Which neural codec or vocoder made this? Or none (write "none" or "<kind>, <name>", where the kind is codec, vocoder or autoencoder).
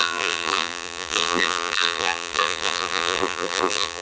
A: vocoder, BigVGAN v2